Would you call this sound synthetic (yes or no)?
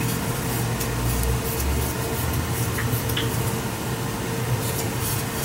no